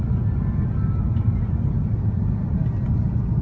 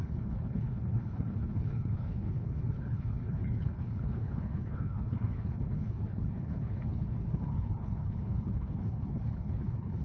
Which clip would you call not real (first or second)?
second